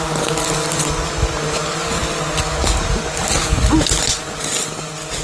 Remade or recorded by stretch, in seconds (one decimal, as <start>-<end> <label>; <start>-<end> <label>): 0.0-5.2 recorded